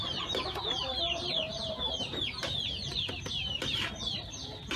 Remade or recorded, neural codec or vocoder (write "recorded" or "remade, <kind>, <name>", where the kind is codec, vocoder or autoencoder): recorded